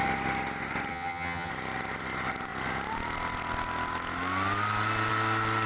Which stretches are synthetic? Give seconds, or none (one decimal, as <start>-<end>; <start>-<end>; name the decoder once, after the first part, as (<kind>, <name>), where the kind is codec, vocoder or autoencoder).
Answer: 0.9-1.5 (vocoder, HiFi-GAN)